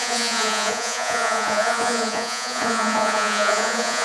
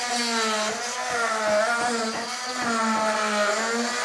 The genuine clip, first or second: second